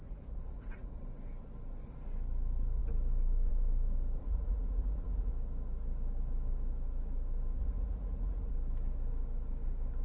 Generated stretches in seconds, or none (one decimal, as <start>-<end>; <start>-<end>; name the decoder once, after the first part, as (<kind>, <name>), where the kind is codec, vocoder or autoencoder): 0.0-1.0 (vocoder, Vocos); 4.2-5.3; 7.6-8.5